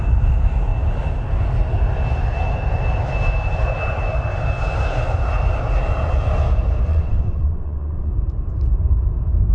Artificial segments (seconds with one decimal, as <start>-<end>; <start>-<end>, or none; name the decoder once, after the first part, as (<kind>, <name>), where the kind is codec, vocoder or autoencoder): 6.9-8.1 (vocoder, WaveNeXt)